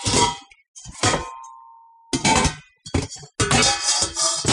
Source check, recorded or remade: recorded